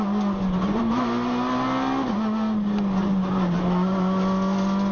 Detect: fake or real real